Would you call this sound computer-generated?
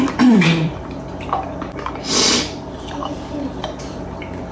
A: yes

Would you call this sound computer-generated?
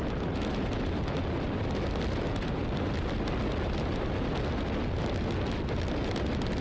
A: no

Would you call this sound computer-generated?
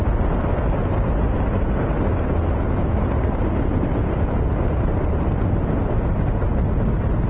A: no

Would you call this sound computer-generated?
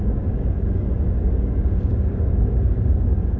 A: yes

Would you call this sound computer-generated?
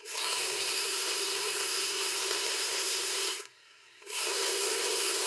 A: yes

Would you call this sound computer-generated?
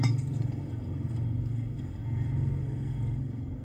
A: yes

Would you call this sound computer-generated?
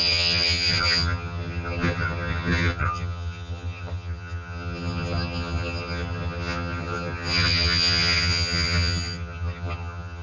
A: yes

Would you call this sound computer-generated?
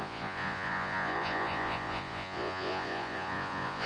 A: yes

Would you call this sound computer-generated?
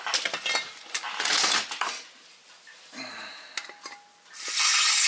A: no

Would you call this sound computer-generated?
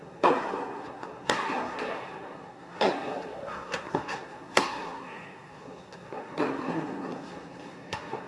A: yes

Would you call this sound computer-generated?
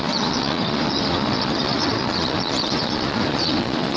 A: yes